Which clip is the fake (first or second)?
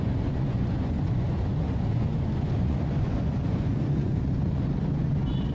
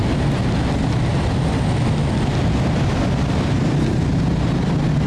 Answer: first